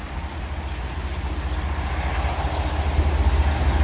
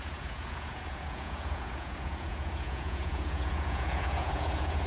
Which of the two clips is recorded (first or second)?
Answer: first